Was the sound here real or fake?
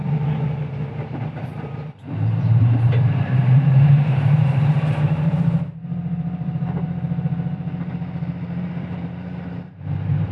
fake